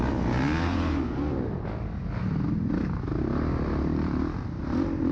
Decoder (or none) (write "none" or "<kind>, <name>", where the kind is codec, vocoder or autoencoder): none